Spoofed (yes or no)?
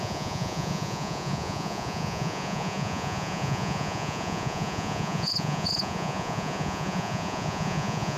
yes